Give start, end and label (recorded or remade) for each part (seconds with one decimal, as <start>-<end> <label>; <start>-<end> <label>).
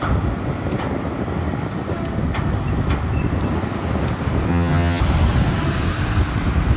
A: 0.0-4.5 recorded; 4.5-5.0 remade; 5.0-6.8 recorded